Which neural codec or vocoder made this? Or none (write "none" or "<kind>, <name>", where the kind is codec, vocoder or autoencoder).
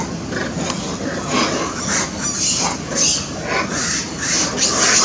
none